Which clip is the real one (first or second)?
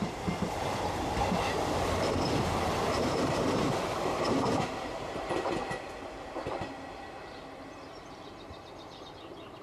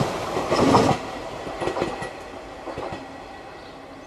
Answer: second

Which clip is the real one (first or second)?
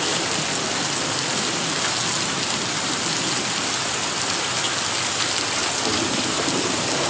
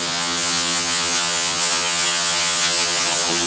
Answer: first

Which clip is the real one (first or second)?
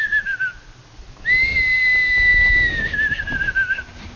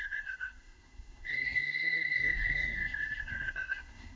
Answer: first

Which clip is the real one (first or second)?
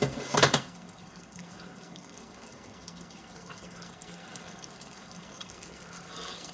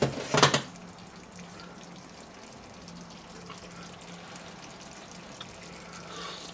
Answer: second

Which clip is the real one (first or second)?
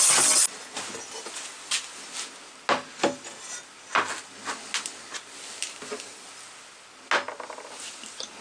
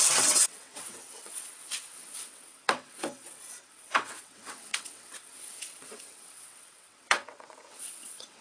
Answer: first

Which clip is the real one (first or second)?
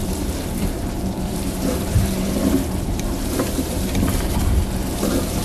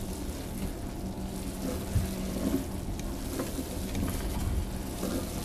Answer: second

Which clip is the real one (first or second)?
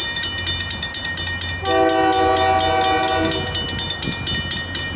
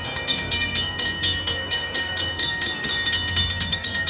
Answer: first